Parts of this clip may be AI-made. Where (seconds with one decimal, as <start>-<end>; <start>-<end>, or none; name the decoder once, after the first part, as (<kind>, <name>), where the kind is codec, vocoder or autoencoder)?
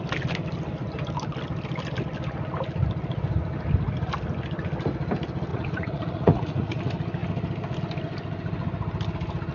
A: 5.5-6.8 (vocoder, Vocos)